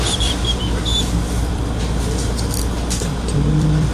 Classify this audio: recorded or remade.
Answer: remade